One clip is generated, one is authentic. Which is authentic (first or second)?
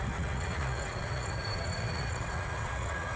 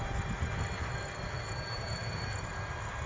second